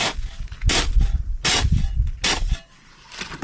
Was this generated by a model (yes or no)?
no